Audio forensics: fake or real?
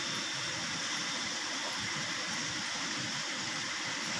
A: real